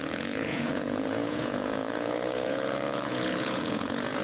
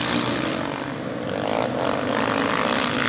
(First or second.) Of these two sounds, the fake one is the first